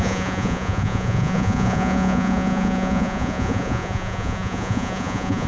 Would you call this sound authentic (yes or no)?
no